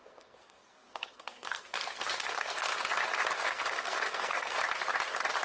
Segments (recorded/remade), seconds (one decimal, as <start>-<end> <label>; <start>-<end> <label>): 0.0-2.7 remade; 2.7-3.3 recorded; 3.3-4.6 remade; 4.6-5.4 recorded